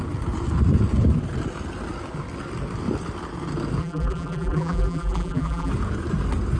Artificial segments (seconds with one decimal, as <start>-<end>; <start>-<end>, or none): 3.8-5.7

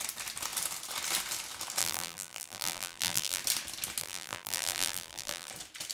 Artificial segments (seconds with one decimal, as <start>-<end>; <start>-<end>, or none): 1.8-3.4; 4.0-5.5

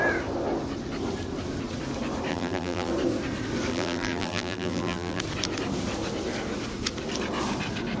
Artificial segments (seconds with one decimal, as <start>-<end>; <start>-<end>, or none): 2.3-2.9; 3.7-5.2

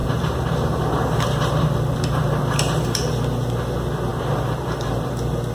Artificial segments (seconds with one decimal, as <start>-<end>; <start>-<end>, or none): 0.0-3.1; 4.1-5.1

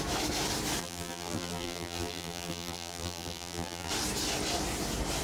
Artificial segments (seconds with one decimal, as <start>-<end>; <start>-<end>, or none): 0.8-3.9

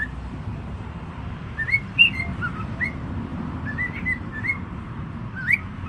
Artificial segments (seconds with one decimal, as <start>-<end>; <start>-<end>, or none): 0.5-2.2

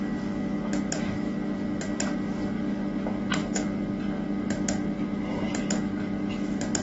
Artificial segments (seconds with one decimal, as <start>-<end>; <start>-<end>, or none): none